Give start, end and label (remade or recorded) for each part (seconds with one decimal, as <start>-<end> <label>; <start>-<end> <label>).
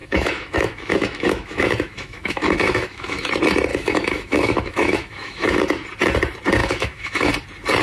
0.0-3.3 remade; 3.3-3.7 recorded; 3.7-5.6 remade; 5.6-6.6 recorded; 6.6-7.3 remade; 7.3-7.8 recorded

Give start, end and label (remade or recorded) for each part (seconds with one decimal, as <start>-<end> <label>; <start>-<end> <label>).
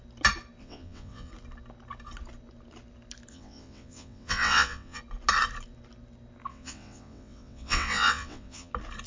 0.0-0.6 recorded; 0.6-1.3 remade; 1.3-3.3 recorded; 3.3-5.0 remade; 5.0-6.5 recorded; 6.5-8.7 remade; 8.7-9.1 recorded